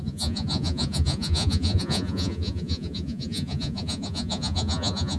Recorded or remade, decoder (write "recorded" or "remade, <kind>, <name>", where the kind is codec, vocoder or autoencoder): remade, vocoder, Vocos